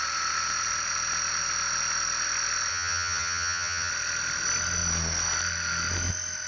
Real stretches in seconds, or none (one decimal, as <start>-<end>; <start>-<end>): 0.0-2.7; 3.9-6.5